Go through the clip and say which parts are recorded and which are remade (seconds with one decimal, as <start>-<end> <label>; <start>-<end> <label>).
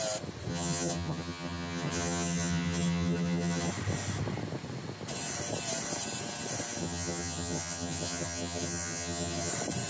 0.0-0.5 recorded; 0.5-3.7 remade; 3.7-6.8 recorded; 6.8-9.5 remade; 9.5-9.9 recorded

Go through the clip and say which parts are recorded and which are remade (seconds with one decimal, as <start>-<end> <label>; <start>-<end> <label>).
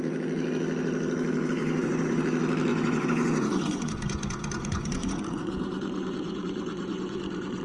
0.0-1.6 recorded; 1.6-2.2 remade; 2.2-2.7 recorded; 2.7-7.6 remade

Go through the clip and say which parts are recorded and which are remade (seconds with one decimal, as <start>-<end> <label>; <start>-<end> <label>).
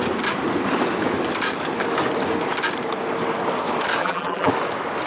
0.0-4.0 recorded; 4.0-4.5 remade; 4.5-5.1 recorded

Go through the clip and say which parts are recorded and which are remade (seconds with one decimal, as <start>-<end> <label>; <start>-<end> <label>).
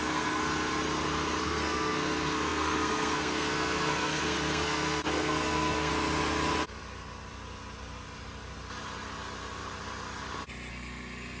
0.0-0.4 remade; 0.4-1.4 recorded; 1.4-5.9 remade; 5.9-10.7 recorded; 10.7-11.4 remade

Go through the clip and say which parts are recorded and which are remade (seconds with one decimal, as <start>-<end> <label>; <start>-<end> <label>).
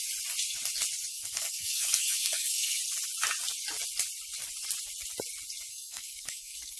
0.0-1.1 recorded; 1.1-2.8 remade; 2.8-5.7 recorded; 5.7-6.8 remade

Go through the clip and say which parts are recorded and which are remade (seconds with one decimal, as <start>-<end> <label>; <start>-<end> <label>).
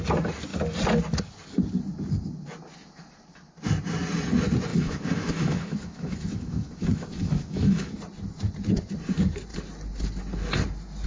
0.0-4.7 recorded; 4.7-8.0 remade; 8.0-11.1 recorded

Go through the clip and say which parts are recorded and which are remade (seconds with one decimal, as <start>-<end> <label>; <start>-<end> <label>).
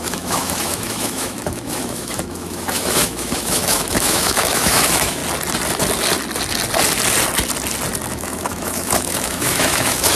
0.0-5.2 remade; 5.2-8.1 recorded; 8.1-10.2 remade